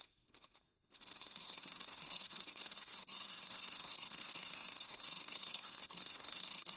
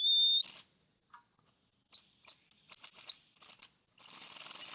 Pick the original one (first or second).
second